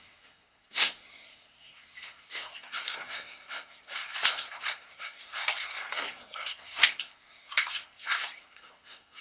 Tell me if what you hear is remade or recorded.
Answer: remade